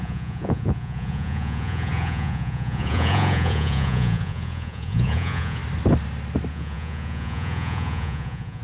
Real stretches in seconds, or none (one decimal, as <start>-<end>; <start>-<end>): 5.6-6.5